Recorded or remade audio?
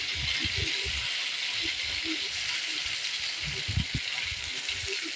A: recorded